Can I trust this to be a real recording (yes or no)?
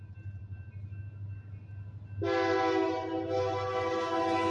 yes